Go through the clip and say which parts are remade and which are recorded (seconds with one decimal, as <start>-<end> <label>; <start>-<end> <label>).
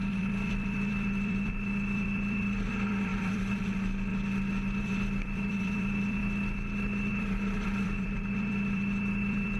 0.0-4.1 remade; 4.1-4.8 recorded; 4.8-6.2 remade; 6.2-7.1 recorded; 7.1-9.6 remade